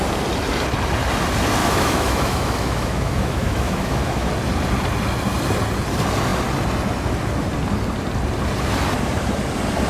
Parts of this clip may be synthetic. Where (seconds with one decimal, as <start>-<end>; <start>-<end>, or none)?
1.6-4.3